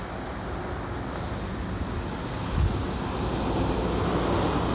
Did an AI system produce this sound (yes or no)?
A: no